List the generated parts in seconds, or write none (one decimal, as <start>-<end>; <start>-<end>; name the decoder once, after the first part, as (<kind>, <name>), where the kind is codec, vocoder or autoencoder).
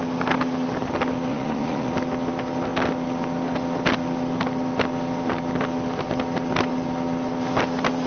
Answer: 1.3-1.9 (vocoder, Vocos)